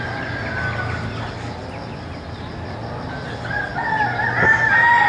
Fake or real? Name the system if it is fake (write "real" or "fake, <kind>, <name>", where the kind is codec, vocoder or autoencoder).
real